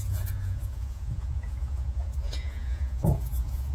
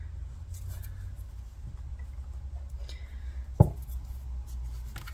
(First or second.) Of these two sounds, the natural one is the second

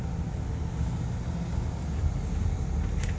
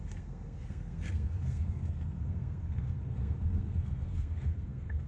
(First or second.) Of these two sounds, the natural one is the first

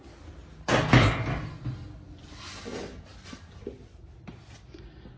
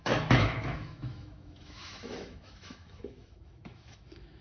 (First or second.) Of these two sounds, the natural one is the first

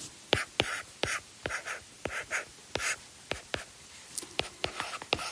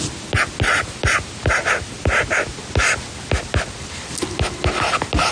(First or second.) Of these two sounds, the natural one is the second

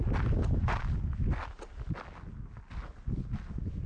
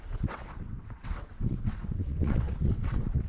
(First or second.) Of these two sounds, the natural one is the first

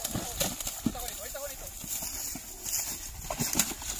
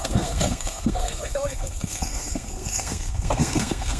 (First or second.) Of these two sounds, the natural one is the first